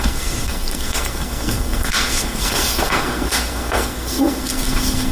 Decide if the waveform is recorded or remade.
remade